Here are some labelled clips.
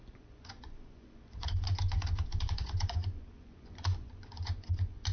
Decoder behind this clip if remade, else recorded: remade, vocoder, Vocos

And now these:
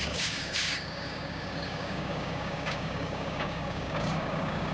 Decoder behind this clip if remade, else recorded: remade, codec, DAC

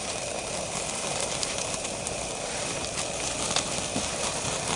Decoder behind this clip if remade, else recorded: remade, vocoder, BigVGAN v2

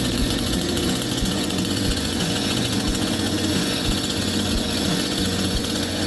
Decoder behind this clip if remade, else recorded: remade, vocoder, Vocos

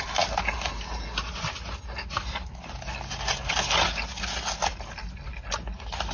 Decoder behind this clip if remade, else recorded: recorded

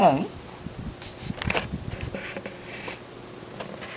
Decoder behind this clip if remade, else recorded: recorded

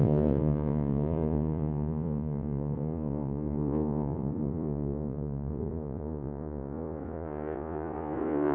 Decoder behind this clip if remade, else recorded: remade, vocoder, Vocos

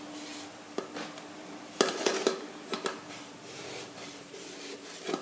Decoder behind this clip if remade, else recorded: recorded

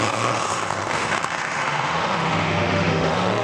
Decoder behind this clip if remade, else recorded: remade, autoencoder, DAC-VAE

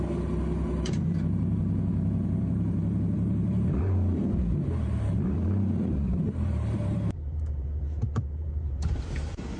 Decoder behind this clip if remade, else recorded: remade, vocoder, BigVGAN v2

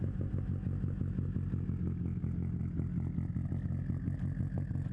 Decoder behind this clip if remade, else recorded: recorded